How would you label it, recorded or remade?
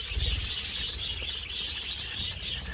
recorded